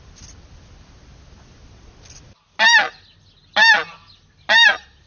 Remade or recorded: recorded